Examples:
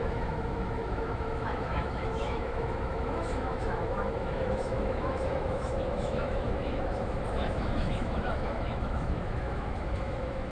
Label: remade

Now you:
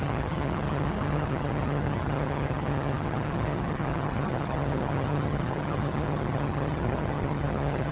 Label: remade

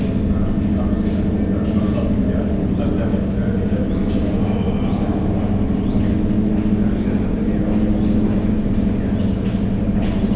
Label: recorded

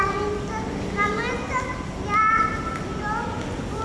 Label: recorded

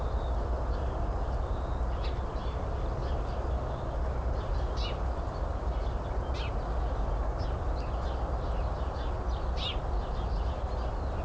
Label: recorded